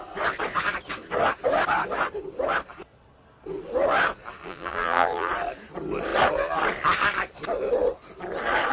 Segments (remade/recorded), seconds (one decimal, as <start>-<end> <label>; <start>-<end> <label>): 0.0-4.4 recorded; 4.4-5.3 remade; 5.3-8.7 recorded